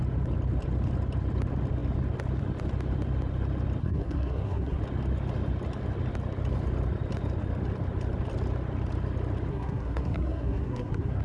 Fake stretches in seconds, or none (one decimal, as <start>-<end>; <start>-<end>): 3.8-4.8; 9.5-11.2